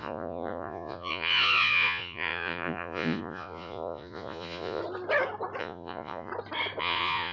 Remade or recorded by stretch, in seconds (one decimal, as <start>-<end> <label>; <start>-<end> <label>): 0.0-4.8 remade; 4.8-5.6 recorded; 5.6-6.3 remade; 6.3-6.8 recorded; 6.8-7.3 remade